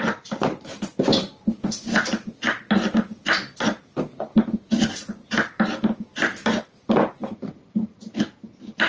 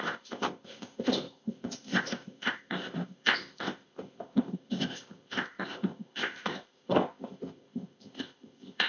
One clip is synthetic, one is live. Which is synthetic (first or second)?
second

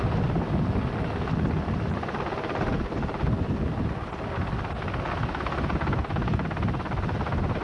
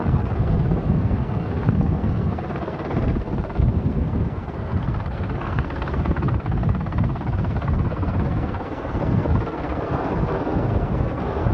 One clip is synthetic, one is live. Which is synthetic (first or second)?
second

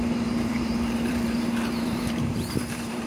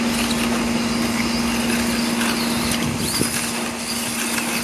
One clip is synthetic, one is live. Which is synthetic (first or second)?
first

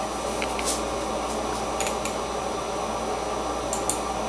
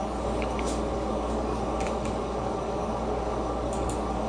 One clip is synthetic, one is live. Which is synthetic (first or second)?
second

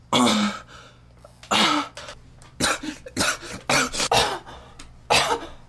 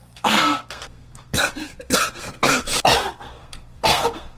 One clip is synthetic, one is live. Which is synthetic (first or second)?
second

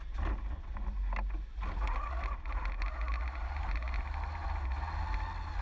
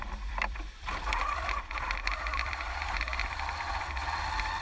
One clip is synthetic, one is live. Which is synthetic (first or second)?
second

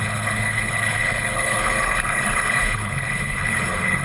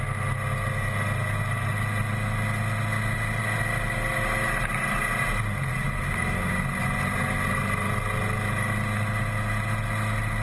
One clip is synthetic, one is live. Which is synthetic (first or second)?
first